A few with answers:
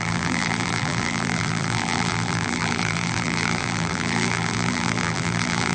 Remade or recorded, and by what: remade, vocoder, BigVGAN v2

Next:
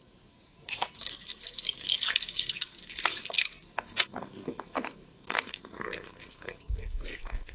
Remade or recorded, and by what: remade, codec, SNAC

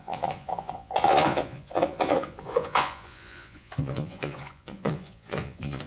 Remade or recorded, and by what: remade, vocoder, Vocos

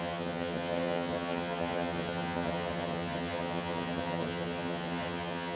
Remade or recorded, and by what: remade, vocoder, HiFi-GAN